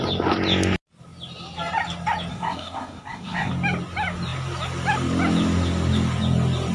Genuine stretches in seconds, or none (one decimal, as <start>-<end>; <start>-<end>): 0.0-2.3; 3.5-6.7